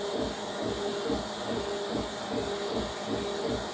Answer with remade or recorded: recorded